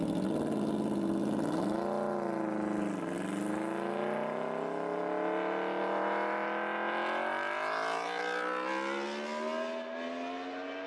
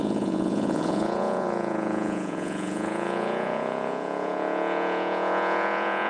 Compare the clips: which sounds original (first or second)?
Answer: first